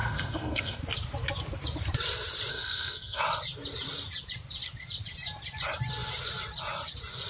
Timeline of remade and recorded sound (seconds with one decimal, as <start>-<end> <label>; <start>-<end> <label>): 0.0-0.8 remade; 0.8-2.5 recorded; 2.5-3.2 remade; 3.2-7.3 recorded